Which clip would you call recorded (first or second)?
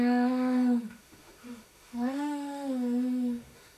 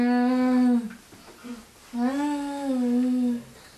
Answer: second